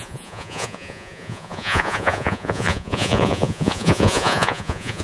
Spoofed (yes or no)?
yes